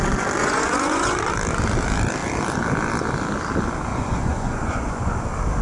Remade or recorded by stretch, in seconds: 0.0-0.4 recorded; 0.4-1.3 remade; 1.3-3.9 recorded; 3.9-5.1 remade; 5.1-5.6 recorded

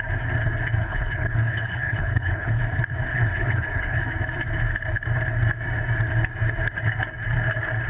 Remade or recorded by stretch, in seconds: 0.0-0.8 recorded; 0.8-2.6 remade; 2.6-3.1 recorded; 3.1-4.0 remade; 4.0-7.9 recorded

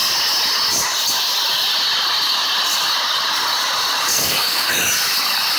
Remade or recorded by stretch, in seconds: 0.0-4.1 recorded; 4.1-4.7 remade; 4.7-5.6 recorded

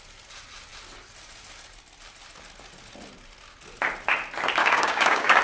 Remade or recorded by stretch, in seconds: 0.0-4.6 recorded; 4.6-5.4 remade

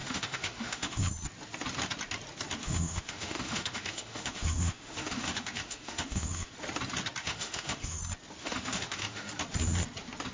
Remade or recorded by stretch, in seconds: 0.0-1.1 remade; 1.1-2.6 recorded; 2.6-6.5 remade; 6.5-7.2 recorded; 7.2-8.0 remade; 8.0-8.4 recorded; 8.4-9.3 remade; 9.3-10.3 recorded

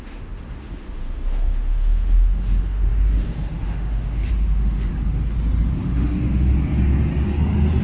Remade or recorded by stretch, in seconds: 0.0-4.9 remade; 4.9-5.7 recorded; 5.7-6.5 remade; 6.5-7.8 recorded

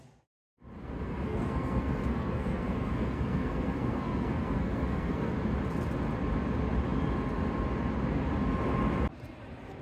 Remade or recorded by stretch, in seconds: 0.0-0.8 recorded; 0.8-5.3 remade; 5.3-9.8 recorded